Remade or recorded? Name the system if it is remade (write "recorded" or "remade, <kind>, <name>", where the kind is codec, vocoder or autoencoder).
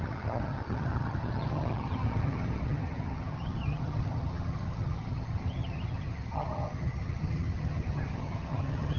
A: remade, vocoder, HiFi-GAN